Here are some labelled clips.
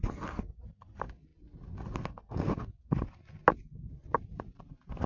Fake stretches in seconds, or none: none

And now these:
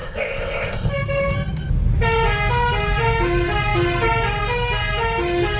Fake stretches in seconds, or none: 0.0-0.9 (codec, ZipCodec)

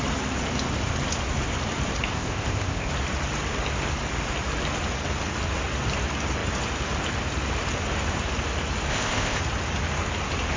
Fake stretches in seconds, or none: 2.1-2.9 (codec, ZipCodec); 8.9-9.4

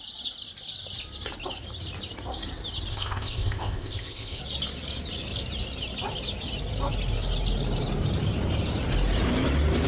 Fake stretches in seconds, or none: 2.9-4.4 (codec, ZipCodec)

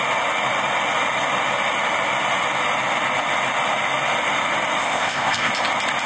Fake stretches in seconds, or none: 4.8-5.5 (codec, ZipCodec)

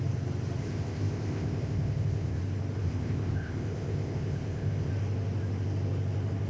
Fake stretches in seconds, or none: 0.6-2.4 (codec, ZipCodec); 2.8-4.9

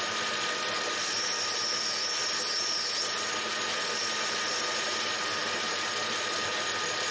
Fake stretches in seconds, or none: none

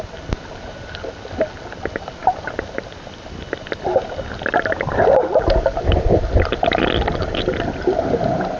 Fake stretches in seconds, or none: none